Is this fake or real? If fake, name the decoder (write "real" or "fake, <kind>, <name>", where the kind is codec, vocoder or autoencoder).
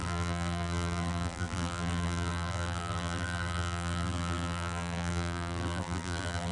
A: fake, vocoder, BigVGAN v2